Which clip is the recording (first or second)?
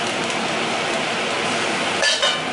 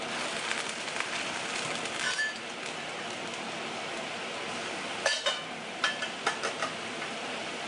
first